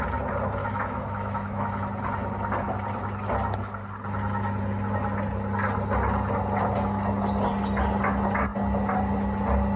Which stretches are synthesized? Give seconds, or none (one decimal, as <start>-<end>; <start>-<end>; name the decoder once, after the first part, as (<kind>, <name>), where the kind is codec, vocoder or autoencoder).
0.6-1.7 (autoencoder, DAC-VAE)

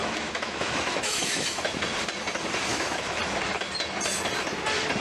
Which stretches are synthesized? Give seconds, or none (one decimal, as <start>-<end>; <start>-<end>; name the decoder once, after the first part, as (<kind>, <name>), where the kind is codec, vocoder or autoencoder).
0.0-1.8 (autoencoder, DAC-VAE); 2.7-3.2

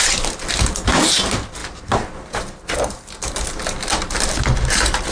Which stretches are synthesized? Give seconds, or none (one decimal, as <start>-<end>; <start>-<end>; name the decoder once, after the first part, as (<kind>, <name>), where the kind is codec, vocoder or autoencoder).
none